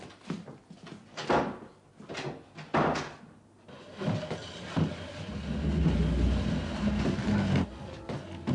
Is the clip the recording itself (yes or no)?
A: yes